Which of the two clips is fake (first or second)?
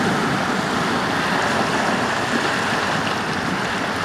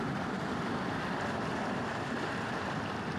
second